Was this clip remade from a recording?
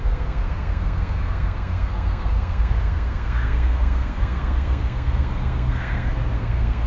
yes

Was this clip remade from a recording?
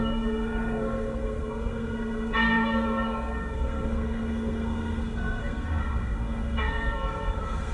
yes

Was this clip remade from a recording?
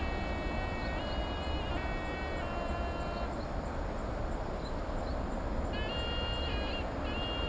no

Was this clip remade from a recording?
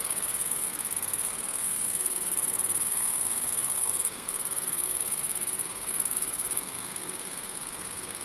yes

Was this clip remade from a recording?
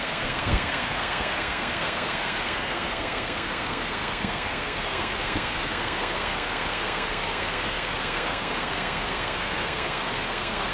yes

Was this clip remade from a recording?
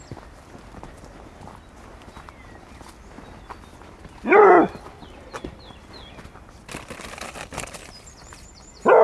no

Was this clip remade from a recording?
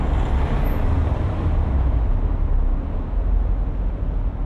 no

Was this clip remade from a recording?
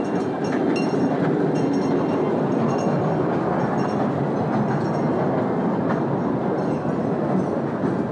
no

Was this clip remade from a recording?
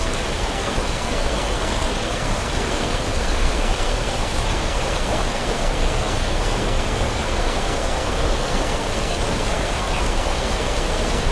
yes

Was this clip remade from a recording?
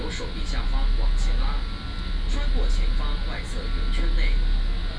no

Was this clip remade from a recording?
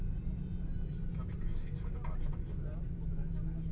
no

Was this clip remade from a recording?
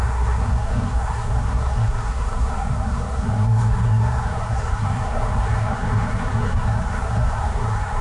yes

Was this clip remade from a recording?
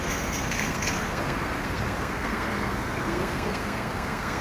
yes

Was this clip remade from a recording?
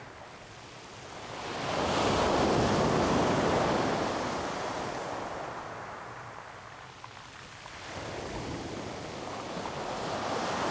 no